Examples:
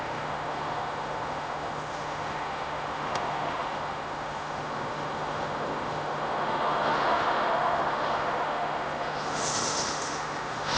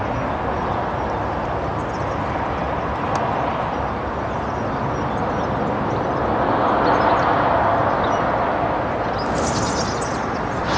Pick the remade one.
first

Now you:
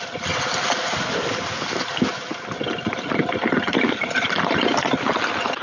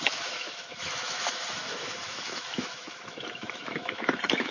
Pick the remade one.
second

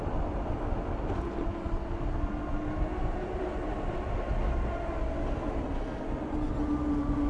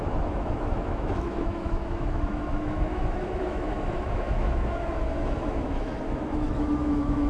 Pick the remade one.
second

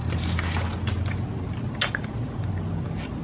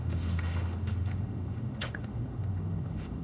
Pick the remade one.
second